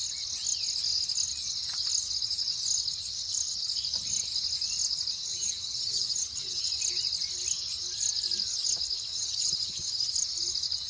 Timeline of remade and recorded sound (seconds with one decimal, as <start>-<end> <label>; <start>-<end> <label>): 0.0-5.3 recorded; 5.3-6.7 remade; 6.7-9.1 recorded; 9.1-10.1 remade; 10.1-10.9 recorded